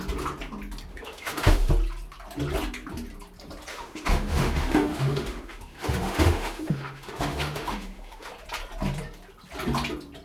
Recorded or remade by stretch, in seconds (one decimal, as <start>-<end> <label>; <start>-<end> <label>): 0.0-0.9 recorded; 0.9-1.7 remade; 1.7-3.7 recorded; 3.7-8.3 remade; 8.3-10.2 recorded